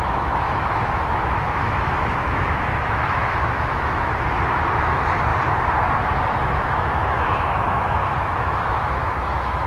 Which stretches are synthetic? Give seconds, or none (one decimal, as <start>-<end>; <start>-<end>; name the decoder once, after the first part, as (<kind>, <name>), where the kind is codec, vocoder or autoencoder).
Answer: 0.0-4.1 (autoencoder, DAC-VAE); 4.8-5.3; 6.6-9.7